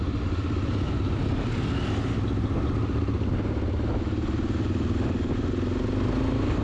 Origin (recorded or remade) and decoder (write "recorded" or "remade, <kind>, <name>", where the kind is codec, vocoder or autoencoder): recorded